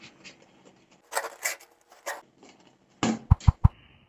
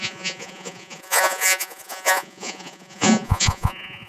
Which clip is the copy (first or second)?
second